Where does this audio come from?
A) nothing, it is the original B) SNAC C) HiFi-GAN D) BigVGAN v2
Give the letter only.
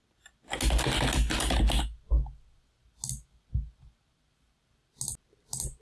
A